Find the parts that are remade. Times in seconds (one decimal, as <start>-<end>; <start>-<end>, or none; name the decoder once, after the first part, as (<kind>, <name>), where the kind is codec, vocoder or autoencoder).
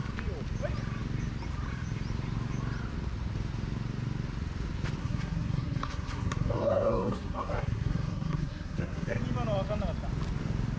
5.0-9.2 (codec, SNAC)